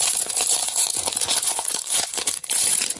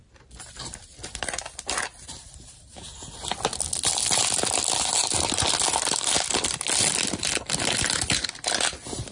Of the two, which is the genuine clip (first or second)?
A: second